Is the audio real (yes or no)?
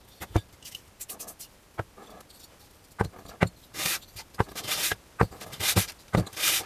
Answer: no